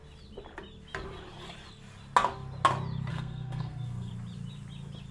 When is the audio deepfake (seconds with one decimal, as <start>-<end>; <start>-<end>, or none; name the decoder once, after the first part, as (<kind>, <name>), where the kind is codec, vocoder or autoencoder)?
3.1-4.1 (codec, SNAC)

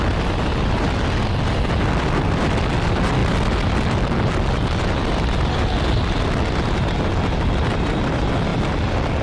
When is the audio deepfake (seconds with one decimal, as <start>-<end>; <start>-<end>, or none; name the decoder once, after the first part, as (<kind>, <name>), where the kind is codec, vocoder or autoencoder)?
none

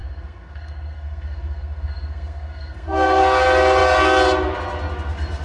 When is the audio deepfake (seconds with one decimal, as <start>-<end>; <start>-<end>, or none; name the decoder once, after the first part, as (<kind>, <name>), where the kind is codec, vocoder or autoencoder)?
0.0-3.2 (codec, SNAC)

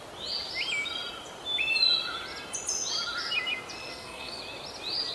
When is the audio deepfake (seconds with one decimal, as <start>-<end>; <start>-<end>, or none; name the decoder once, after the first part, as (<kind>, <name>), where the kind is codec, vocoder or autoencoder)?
3.9-4.4 (codec, SNAC)

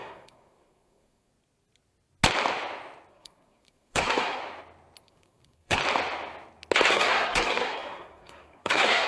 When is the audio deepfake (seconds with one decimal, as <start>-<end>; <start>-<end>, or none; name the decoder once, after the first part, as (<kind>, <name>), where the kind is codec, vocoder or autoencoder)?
0.0-1.3 (codec, SNAC); 3.1-4.4; 5.0-5.8; 6.9-9.1

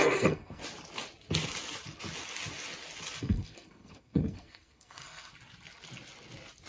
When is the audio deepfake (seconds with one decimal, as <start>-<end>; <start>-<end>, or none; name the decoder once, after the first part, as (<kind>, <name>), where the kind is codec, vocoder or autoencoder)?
0.0-0.6 (codec, SNAC); 3.2-5.3

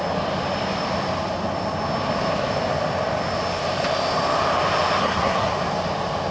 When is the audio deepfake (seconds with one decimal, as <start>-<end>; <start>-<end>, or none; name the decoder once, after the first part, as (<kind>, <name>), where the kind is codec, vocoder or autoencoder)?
5.0-5.5 (codec, SNAC)